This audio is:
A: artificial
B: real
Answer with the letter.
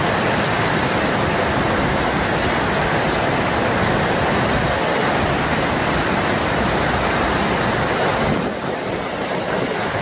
B